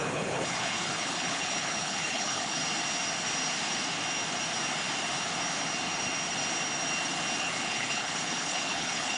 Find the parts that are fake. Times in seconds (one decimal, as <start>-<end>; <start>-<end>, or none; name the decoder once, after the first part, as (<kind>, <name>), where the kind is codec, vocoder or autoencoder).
0.0-2.6 (codec, HILCodec); 7.4-9.2

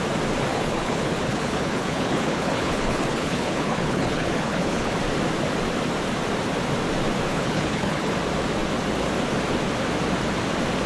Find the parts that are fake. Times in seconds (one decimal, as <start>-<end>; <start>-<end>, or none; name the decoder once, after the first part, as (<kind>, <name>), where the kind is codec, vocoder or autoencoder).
0.5-4.9 (codec, HILCodec); 7.3-8.1

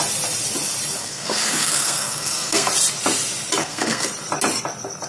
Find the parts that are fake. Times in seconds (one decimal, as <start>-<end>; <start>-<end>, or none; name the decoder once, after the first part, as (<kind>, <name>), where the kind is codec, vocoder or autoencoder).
1.0-2.7 (codec, SNAC); 3.6-4.1

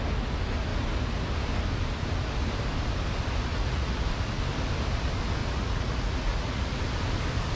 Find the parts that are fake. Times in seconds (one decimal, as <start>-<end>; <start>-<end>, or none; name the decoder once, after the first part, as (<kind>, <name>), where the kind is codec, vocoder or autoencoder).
3.5-4.4 (vocoder, Vocos); 5.4-6.8

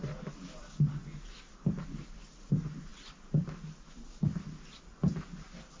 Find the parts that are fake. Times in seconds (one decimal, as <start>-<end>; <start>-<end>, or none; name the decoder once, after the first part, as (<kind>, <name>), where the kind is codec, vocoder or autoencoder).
none